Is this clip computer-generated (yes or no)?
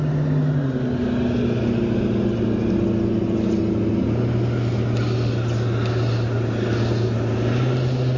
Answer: no